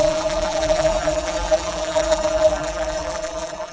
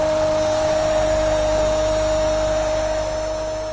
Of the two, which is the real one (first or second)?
second